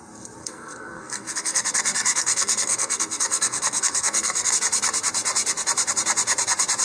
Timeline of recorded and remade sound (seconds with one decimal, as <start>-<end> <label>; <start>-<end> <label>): 0.0-0.4 recorded; 0.4-4.5 remade; 4.5-6.8 recorded

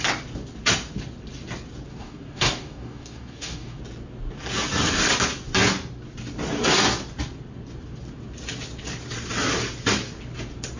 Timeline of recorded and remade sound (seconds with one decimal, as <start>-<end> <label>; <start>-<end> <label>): 0.0-1.9 recorded; 1.9-3.8 remade; 3.8-10.8 recorded

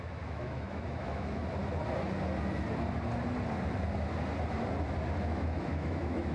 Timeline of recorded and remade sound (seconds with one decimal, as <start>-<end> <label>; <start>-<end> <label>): 0.0-1.4 remade; 1.4-5.2 recorded; 5.2-6.3 remade

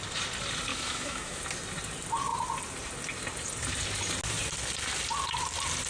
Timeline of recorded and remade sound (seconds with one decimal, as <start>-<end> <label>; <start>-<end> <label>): 0.0-0.7 recorded; 0.7-1.4 remade; 1.4-5.9 recorded

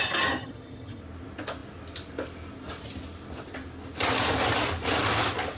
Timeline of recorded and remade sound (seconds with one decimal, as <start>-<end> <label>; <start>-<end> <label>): 0.0-0.4 recorded; 0.4-1.0 remade; 1.0-5.6 recorded

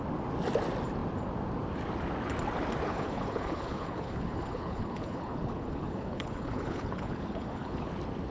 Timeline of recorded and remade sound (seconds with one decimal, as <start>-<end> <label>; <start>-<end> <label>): 0.0-2.9 recorded; 2.9-7.9 remade; 7.9-8.3 recorded

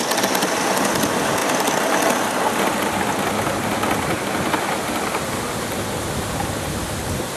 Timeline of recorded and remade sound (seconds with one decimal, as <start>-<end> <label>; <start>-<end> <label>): 0.0-7.4 recorded